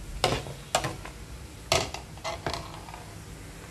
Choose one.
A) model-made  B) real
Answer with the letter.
B